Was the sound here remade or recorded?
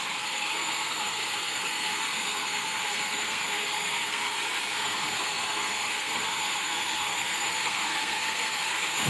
remade